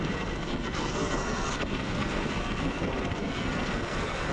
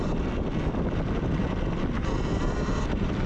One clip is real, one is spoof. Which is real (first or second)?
second